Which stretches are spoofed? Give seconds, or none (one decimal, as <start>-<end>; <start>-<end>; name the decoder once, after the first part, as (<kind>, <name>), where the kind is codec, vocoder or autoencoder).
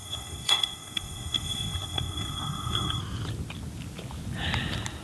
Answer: 0.0-3.0 (codec, SNAC)